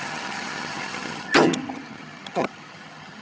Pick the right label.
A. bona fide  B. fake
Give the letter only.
B